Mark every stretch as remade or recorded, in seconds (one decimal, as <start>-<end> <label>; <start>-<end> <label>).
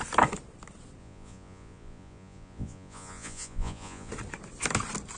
0.0-1.0 recorded; 1.0-4.1 remade; 4.1-5.2 recorded